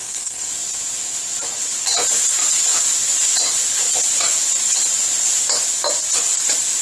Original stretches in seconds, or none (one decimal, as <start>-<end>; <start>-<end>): 0.5-6.8